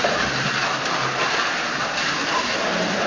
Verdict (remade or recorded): remade